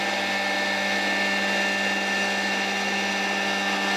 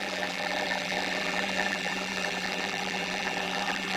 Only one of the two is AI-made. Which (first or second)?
second